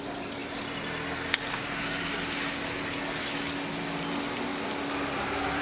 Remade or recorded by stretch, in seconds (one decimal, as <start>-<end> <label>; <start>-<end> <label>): 0.0-4.5 recorded; 4.5-5.6 remade